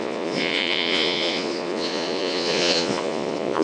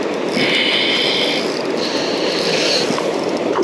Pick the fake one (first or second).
first